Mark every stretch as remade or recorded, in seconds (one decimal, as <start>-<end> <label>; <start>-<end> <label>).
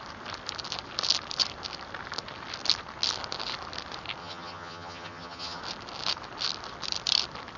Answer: 0.0-4.2 recorded; 4.2-5.6 remade; 5.6-7.6 recorded